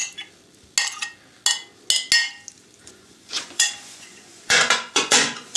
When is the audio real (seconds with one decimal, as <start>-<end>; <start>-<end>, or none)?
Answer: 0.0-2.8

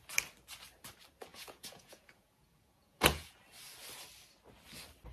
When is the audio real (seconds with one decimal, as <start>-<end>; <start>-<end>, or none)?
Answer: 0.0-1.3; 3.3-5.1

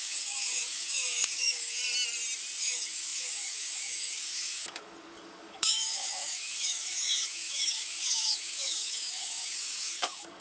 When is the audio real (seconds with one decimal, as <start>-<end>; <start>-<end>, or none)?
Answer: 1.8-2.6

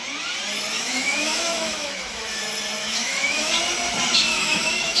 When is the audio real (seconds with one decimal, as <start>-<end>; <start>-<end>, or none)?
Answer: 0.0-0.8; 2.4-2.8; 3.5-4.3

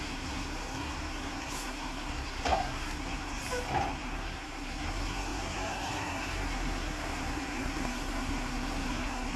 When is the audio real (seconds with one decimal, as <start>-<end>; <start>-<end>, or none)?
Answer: 3.4-3.9

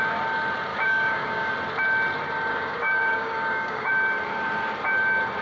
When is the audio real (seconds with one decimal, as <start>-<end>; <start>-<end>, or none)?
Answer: 0.0-0.7; 1.5-2.5; 3.9-5.4